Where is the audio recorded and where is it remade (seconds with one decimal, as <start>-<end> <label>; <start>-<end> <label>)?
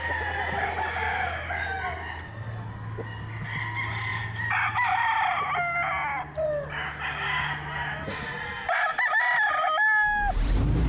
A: 0.0-10.9 recorded